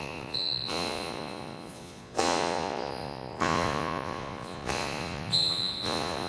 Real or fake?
fake